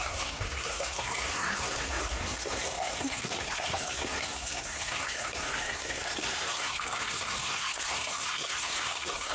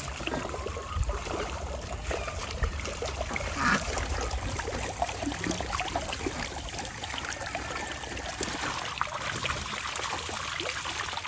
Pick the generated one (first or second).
first